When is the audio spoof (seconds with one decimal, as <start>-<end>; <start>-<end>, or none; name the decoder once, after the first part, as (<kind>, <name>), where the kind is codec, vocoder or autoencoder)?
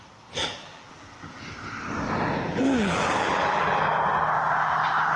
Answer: 0.4-1.4 (vocoder, BigVGAN v2); 2.5-3.8